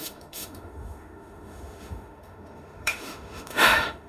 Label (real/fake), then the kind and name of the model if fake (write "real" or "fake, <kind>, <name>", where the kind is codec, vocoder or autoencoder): fake, autoencoder, DAC-VAE